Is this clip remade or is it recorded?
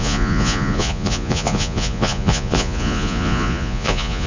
remade